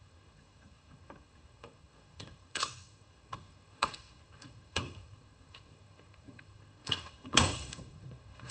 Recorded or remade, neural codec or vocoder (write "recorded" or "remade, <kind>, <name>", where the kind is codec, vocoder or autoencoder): remade, codec, SNAC